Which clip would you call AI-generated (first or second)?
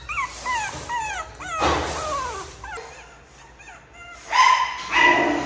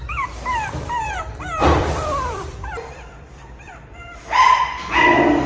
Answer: second